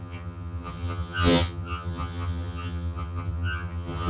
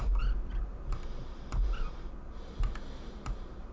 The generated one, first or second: first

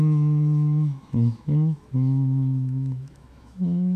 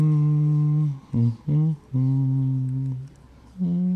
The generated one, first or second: first